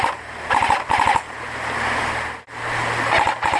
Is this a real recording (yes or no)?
yes